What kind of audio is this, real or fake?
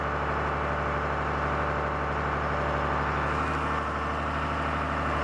real